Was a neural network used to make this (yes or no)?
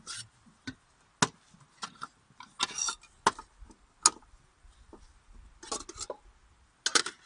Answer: no